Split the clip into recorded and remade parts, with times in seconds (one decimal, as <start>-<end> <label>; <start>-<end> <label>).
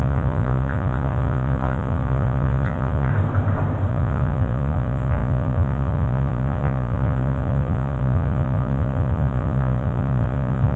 0.0-3.1 remade; 3.1-3.9 recorded; 3.9-10.8 remade